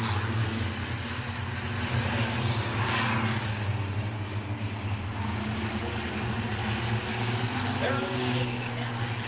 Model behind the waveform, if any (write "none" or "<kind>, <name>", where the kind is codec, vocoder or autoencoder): none